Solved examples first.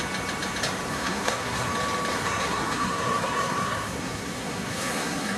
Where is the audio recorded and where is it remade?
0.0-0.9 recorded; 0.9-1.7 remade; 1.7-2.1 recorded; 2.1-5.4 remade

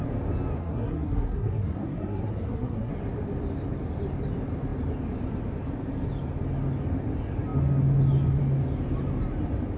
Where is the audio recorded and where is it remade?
0.0-0.6 recorded; 0.6-2.9 remade; 2.9-9.8 recorded

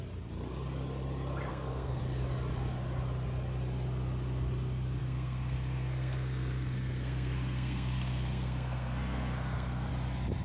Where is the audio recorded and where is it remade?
0.0-1.5 recorded; 1.5-2.0 remade; 2.0-5.0 recorded; 5.0-9.9 remade; 9.9-10.4 recorded

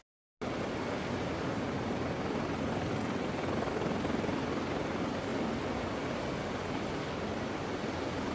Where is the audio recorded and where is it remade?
0.0-8.3 recorded

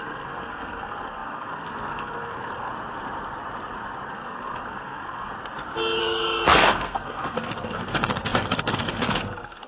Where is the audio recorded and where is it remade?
0.0-2.7 remade; 2.7-4.1 recorded; 4.1-5.3 remade; 5.3-6.0 recorded; 6.0-9.7 remade

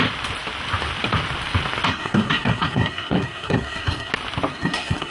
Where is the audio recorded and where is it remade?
0.0-1.9 recorded; 1.9-4.1 remade; 4.1-4.5 recorded; 4.5-5.1 remade

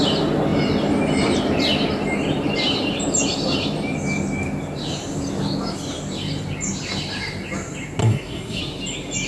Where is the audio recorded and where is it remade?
0.0-8.0 recorded; 8.0-8.6 remade; 8.6-9.3 recorded

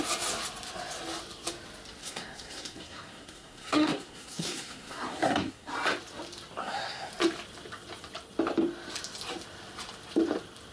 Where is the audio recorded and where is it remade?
0.0-2.0 recorded; 2.0-5.7 remade; 5.7-6.6 recorded; 6.6-7.1 remade; 7.1-10.7 recorded